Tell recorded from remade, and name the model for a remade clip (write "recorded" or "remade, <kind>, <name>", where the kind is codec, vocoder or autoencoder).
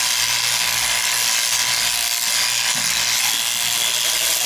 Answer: recorded